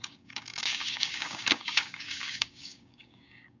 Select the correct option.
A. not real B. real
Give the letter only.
A